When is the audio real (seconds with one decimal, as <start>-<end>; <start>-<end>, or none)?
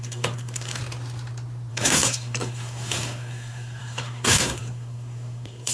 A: 0.8-1.7